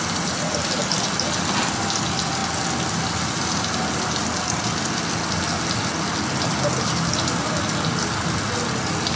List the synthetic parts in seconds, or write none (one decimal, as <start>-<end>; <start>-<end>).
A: none